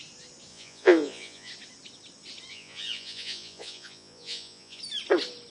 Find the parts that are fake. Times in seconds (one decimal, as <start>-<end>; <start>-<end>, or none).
0.5-1.5; 2.5-4.8